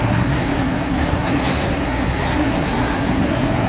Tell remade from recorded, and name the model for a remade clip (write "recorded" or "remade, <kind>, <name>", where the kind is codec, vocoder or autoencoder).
remade, codec, SNAC